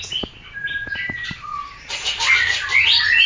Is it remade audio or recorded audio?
recorded